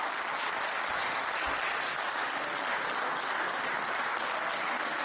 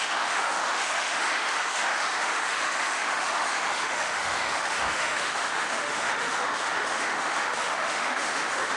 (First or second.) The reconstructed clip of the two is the second